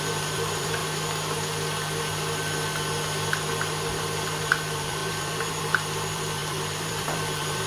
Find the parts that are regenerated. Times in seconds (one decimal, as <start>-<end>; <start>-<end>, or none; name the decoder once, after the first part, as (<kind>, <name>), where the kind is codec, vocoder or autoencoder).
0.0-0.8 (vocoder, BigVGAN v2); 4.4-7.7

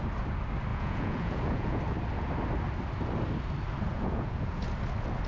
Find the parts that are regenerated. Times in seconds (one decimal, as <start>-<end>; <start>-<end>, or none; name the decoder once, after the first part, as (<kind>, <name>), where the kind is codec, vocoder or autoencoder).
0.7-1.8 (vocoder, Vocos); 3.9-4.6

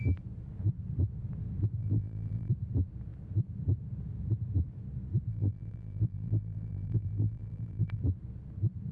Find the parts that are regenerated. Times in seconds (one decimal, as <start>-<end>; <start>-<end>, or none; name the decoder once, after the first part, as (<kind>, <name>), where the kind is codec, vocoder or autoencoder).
1.8-2.5 (vocoder, BigVGAN v2); 5.3-8.0